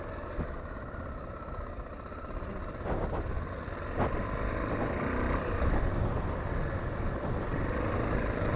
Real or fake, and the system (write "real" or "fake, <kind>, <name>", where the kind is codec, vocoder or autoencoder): real